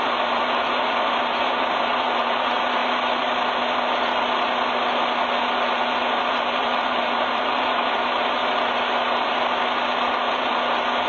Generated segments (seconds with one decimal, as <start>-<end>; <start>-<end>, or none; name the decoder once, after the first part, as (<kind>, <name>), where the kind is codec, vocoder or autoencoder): 0.0-2.8 (vocoder, BigVGAN v2); 6.3-8.4; 10.3-11.1